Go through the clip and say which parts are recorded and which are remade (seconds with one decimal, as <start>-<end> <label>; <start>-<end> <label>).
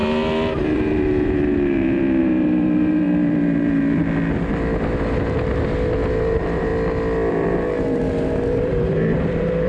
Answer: 0.0-4.0 remade; 4.0-6.1 recorded; 6.1-6.7 remade; 6.7-7.3 recorded; 7.3-9.7 remade